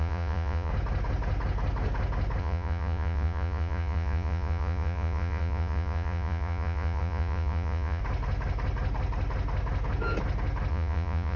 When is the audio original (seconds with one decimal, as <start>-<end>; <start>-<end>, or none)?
0.7-2.4; 8.0-10.7